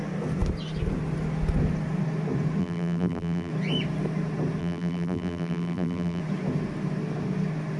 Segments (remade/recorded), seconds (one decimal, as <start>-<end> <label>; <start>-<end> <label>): 0.0-2.6 recorded; 2.6-3.5 remade; 3.5-4.6 recorded; 4.6-6.2 remade; 6.2-7.8 recorded